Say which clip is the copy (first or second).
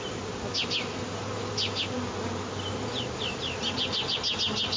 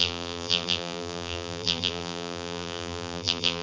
second